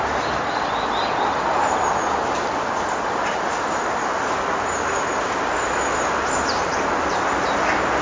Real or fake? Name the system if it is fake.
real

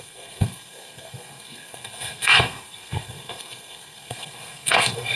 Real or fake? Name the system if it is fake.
fake, codec, SNAC